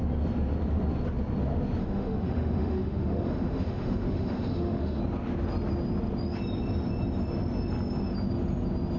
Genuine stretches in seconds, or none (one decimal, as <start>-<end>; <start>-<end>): 0.0-1.8; 5.0-9.0